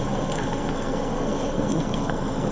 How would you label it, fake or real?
fake